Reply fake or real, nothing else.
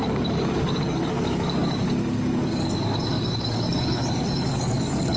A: fake